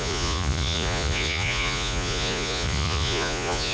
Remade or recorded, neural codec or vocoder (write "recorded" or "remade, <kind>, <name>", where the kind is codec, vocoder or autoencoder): remade, vocoder, Vocos